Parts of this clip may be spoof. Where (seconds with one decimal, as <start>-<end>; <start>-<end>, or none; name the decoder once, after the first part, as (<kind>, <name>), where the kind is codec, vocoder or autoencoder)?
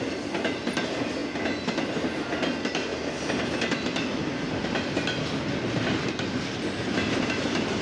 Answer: none